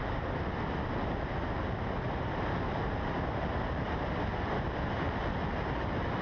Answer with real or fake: real